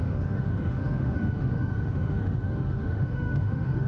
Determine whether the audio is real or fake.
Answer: fake